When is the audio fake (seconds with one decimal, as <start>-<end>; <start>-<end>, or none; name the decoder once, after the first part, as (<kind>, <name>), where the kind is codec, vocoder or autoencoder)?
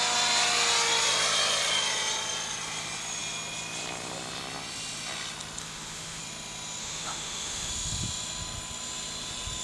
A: 5.6-6.2 (autoencoder, DAC-VAE); 6.8-7.7